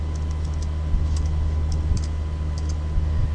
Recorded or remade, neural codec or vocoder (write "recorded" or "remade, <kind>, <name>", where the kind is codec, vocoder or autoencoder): recorded